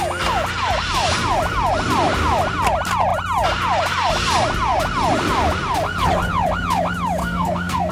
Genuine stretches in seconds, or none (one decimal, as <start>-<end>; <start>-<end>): 0.0-7.2